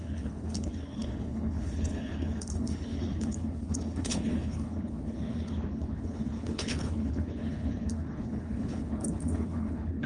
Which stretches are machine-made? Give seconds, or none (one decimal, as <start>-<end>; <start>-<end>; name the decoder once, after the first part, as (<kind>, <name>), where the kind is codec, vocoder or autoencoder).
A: 0.0-10.1 (codec, HILCodec)